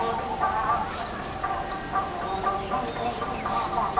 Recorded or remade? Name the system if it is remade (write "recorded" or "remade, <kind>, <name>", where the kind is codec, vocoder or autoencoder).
recorded